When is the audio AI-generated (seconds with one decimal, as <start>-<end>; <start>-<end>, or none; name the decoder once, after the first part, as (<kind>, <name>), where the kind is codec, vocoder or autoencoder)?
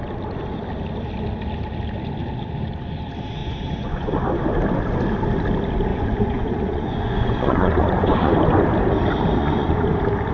3.4-4.2 (vocoder, Vocos); 5.9-8.3; 9.4-9.9